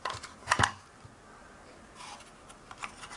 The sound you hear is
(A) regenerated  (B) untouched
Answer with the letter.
B